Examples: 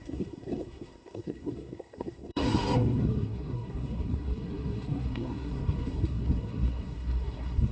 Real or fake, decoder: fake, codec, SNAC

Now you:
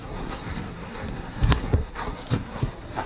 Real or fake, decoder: fake, codec, SNAC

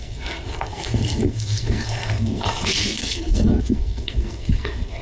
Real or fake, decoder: fake, codec, SNAC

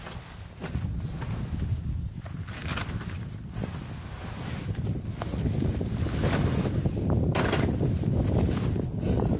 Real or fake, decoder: real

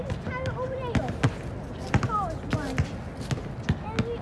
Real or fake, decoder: real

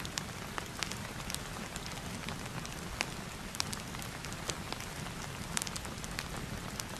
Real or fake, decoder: real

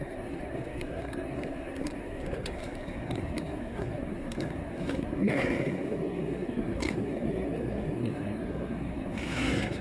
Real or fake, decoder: fake, codec, SNAC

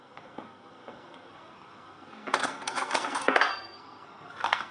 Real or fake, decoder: fake, codec, SNAC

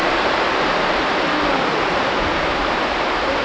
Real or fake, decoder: real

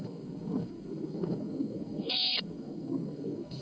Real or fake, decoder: fake, codec, SNAC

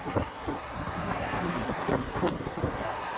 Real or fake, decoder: fake, codec, SNAC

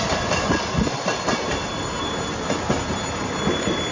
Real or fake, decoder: real